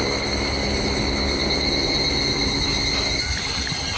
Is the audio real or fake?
real